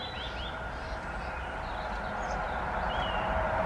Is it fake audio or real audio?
real